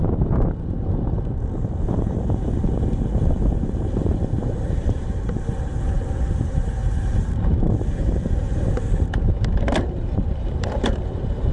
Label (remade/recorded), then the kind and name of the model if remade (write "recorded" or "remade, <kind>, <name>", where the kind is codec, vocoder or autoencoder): remade, vocoder, BigVGAN v2